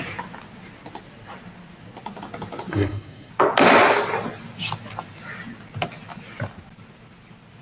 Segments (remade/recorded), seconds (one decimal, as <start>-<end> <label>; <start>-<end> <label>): 0.0-2.7 recorded; 2.7-3.3 remade; 3.3-7.6 recorded